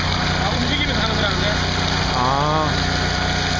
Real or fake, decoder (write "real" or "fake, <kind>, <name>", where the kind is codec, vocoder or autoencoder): real